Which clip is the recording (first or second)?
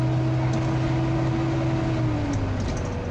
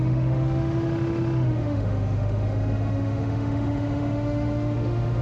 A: first